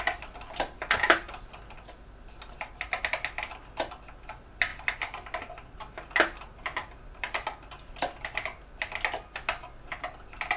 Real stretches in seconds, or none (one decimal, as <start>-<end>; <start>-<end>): 0.0-10.6